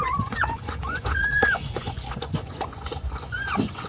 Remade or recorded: remade